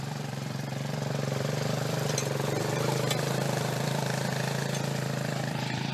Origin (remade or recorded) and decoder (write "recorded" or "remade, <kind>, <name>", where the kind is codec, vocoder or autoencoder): remade, vocoder, BigVGAN v2